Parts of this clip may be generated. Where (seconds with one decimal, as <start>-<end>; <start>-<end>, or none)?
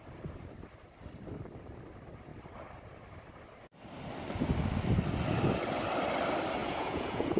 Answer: 6.6-7.4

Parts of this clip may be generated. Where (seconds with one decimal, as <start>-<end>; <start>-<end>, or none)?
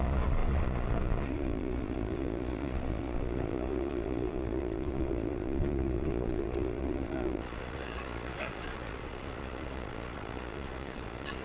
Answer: 0.0-11.4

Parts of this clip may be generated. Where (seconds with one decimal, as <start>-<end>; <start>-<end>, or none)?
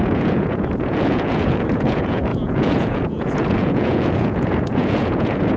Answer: 0.0-5.6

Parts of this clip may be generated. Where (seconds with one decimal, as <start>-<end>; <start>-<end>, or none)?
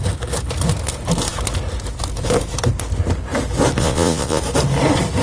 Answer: 3.8-4.4